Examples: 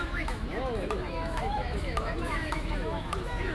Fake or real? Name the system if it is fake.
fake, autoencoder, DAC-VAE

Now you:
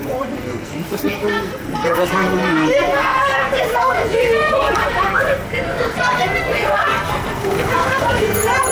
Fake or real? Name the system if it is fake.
fake, codec, SNAC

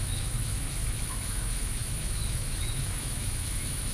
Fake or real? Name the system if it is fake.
fake, autoencoder, DAC-VAE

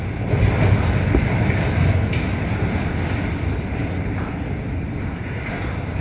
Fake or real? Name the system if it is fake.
real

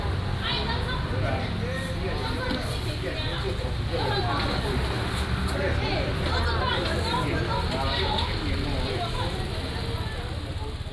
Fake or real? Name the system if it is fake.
real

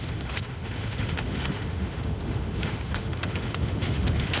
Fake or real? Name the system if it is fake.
fake, autoencoder, DAC-VAE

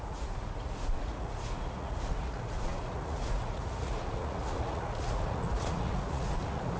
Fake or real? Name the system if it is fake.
fake, vocoder, Vocos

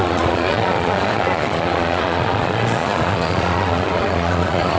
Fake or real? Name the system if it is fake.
fake, vocoder, Vocos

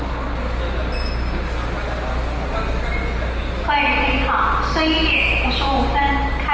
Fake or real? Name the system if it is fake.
real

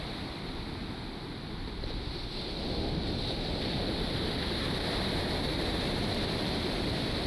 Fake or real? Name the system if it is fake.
fake, vocoder, BigVGAN v2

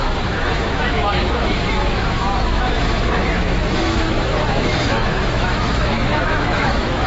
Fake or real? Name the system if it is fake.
fake, autoencoder, DAC-VAE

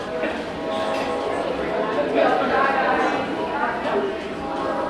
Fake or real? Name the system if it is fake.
real